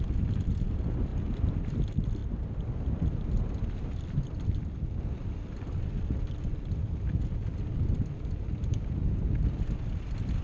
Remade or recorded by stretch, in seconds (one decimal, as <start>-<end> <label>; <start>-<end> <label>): 0.0-10.4 recorded